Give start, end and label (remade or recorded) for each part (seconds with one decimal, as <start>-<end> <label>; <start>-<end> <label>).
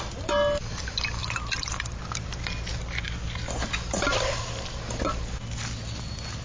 0.0-6.4 recorded